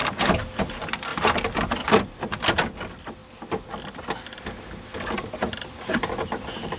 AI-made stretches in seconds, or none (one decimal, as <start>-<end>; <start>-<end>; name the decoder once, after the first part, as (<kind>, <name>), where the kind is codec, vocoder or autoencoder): none